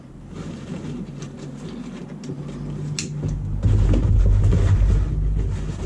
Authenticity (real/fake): real